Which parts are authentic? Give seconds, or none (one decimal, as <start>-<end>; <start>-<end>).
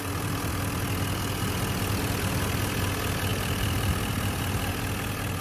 0.0-3.3; 4.4-5.4